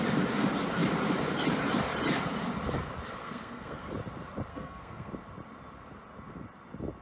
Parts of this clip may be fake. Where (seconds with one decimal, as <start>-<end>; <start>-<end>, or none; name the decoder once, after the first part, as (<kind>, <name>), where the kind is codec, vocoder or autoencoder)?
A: 3.2-3.9 (codec, SNAC); 4.5-5.1